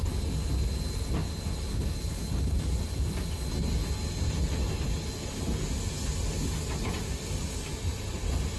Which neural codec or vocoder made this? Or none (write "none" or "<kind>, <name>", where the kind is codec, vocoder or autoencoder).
none